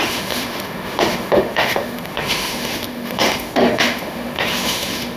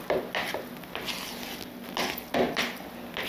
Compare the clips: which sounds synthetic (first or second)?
first